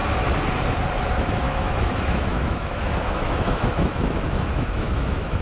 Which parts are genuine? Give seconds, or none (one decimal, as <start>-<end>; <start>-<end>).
0.0-1.0

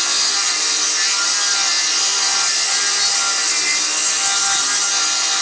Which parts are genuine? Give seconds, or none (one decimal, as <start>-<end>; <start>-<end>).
0.0-5.4

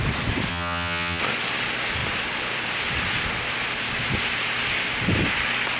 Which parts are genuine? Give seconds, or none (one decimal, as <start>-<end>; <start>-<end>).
0.0-0.5; 1.2-5.8

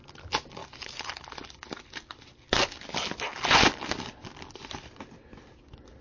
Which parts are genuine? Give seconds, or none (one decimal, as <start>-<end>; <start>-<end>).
0.0-6.0

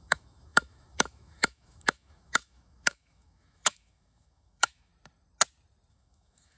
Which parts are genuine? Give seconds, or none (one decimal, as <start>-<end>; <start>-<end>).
4.9-5.9

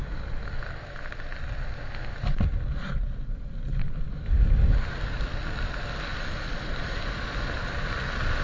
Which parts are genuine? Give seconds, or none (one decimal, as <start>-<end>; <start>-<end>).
0.0-8.4